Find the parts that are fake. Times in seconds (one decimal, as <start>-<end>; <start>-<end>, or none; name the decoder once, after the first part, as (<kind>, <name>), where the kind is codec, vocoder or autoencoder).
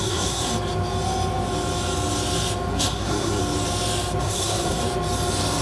0.0-0.5 (codec, SNAC); 2.7-3.4; 4.2-4.8